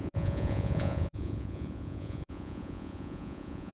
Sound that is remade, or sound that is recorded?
remade